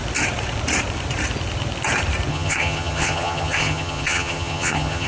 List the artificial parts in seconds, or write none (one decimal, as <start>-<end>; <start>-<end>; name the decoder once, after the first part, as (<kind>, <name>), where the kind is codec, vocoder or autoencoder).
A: 2.3-5.1 (vocoder, HiFi-GAN)